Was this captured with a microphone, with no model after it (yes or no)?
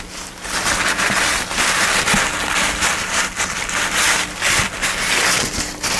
yes